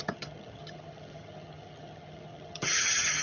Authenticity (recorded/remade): remade